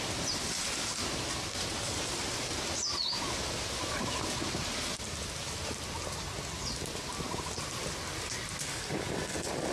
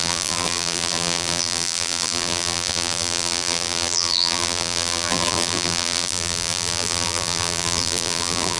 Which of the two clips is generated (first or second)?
second